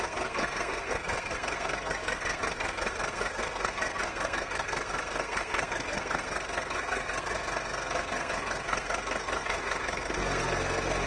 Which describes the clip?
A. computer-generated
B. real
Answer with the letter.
A